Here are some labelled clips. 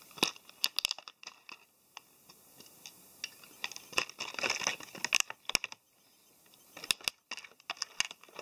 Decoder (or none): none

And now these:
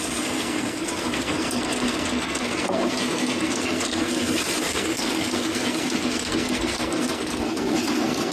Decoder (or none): codec, SNAC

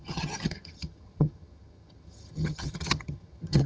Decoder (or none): vocoder, HiFi-GAN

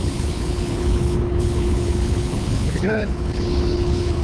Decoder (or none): codec, HILCodec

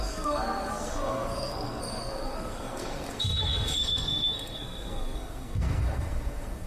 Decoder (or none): codec, SNAC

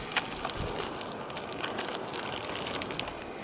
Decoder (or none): none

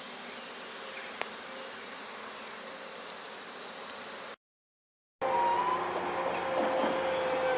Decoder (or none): none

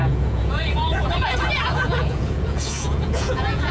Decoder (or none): vocoder, Vocos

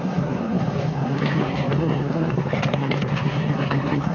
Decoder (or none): codec, SNAC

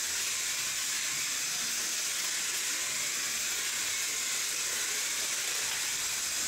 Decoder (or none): none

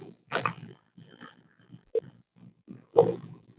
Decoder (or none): vocoder, BigVGAN v2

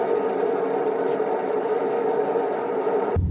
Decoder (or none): none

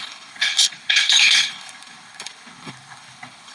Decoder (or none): codec, HILCodec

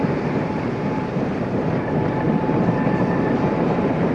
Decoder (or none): vocoder, BigVGAN v2